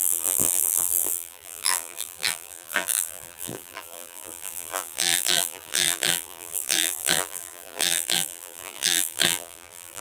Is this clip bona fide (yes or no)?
no